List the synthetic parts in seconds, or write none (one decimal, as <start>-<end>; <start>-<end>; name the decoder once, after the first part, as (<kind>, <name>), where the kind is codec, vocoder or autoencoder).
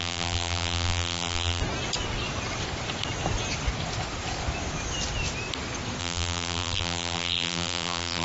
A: 0.0-1.6 (vocoder, BigVGAN v2); 6.0-8.2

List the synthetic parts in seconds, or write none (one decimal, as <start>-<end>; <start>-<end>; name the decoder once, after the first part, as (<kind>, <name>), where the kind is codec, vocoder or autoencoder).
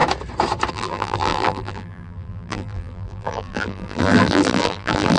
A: 0.7-5.2 (vocoder, BigVGAN v2)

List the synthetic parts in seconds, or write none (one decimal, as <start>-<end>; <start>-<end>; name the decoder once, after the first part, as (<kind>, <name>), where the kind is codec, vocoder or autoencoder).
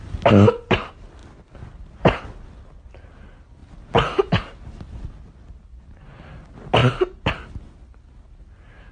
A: 3.6-4.3 (vocoder, BigVGAN v2)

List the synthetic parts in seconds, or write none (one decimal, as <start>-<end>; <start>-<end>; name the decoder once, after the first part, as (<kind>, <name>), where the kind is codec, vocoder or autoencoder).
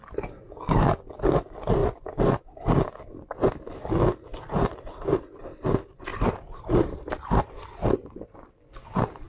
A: 4.3-5.4 (vocoder, BigVGAN v2); 6.1-7.5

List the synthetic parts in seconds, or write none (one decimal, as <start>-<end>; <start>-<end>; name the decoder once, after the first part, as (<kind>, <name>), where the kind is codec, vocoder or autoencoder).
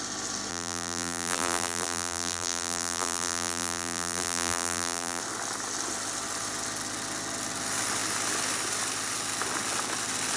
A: 0.5-5.2 (vocoder, BigVGAN v2)